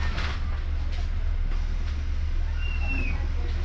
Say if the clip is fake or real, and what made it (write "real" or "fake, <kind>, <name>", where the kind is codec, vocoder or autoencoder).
real